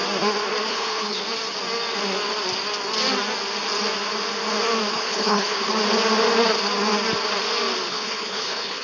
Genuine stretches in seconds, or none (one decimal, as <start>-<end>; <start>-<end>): 0.0-0.7; 1.2-4.9; 5.7-7.9